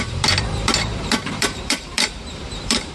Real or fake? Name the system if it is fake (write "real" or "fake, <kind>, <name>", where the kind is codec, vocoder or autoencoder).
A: fake, vocoder, BigVGAN v2